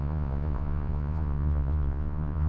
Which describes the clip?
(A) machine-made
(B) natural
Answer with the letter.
A